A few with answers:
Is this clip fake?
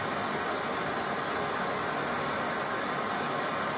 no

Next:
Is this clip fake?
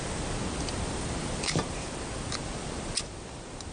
no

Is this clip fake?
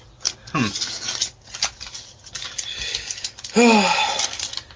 no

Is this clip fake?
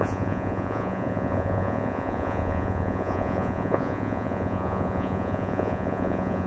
yes